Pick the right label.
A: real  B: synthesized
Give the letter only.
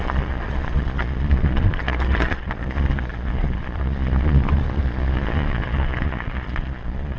B